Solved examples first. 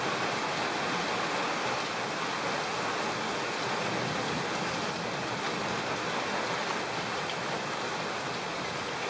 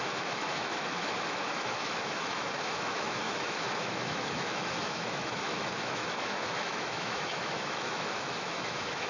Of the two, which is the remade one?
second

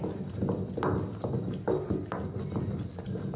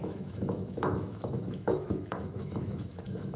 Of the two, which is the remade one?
second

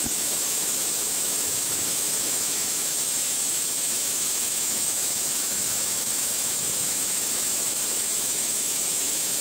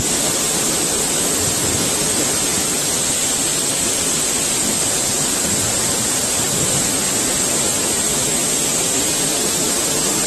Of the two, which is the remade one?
first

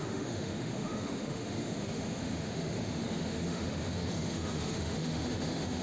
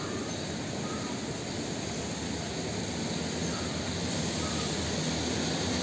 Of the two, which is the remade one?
first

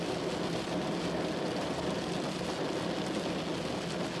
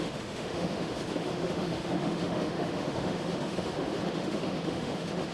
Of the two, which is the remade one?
second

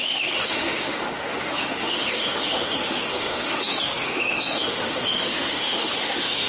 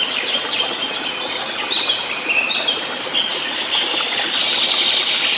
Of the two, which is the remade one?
first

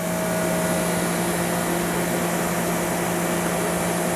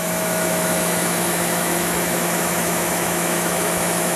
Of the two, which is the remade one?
second